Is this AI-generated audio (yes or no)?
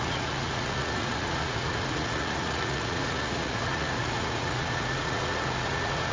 yes